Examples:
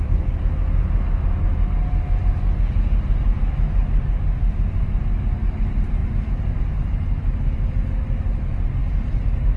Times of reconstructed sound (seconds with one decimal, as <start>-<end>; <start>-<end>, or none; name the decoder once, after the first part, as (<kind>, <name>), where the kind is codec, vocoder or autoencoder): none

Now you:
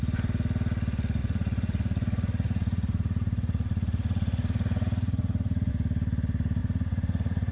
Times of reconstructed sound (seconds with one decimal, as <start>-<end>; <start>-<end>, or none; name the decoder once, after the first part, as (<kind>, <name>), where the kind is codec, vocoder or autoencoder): 1.2-5.7 (vocoder, Vocos); 6.6-7.5

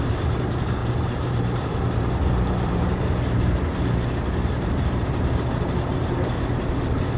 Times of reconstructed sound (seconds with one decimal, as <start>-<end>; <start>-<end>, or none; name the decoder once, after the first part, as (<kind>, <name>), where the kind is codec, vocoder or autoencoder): 0.0-7.2 (vocoder, BigVGAN v2)

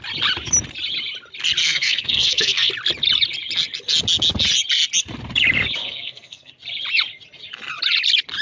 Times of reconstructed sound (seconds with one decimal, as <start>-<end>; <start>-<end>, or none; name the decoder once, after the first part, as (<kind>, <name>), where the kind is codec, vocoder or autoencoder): 1.6-2.7 (codec, SNAC); 5.8-6.5

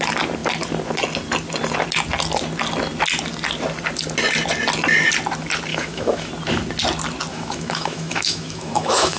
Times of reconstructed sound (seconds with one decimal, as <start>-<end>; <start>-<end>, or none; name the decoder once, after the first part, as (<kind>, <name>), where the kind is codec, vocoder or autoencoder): 5.7-6.3 (autoencoder, DAC-VAE); 7.3-9.2

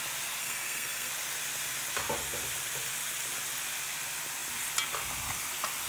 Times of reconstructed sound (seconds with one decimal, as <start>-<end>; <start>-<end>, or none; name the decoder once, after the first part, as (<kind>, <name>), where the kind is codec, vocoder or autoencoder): 0.4-1.1 (codec, SNAC)

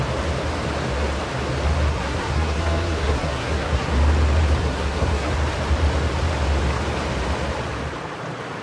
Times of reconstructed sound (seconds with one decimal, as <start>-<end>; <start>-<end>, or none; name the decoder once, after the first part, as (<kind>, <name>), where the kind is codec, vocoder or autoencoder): 1.9-3.9 (codec, SNAC); 4.6-5.3

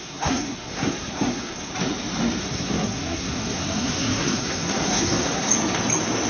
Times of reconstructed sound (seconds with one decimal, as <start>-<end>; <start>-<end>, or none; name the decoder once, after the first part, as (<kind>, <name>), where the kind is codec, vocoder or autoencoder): 0.0-1.7 (codec, SNAC); 2.4-5.5